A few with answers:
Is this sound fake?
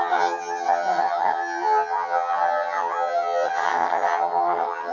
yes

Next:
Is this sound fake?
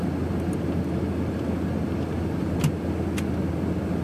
no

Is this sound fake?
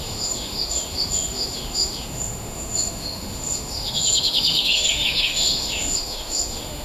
yes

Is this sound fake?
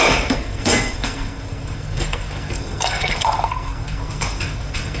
yes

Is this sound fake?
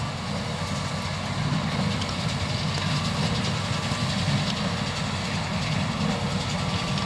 no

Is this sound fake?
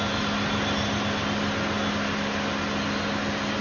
no